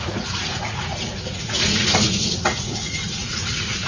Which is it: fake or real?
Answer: fake